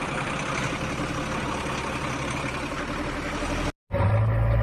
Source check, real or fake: real